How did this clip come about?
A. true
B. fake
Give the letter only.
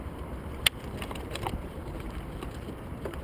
B